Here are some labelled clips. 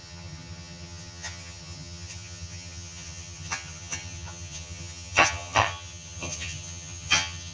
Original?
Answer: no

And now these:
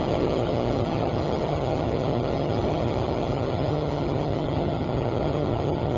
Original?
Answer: no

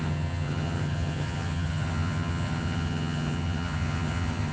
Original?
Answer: no